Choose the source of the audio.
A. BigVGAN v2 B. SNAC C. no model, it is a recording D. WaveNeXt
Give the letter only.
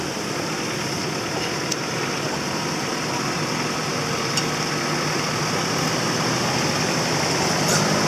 C